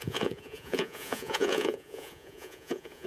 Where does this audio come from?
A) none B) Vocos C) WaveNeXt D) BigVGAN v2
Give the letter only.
B